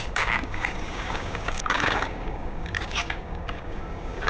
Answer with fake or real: fake